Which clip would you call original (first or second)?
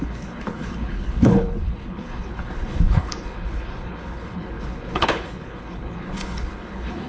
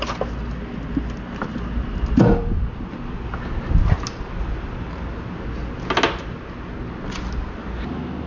second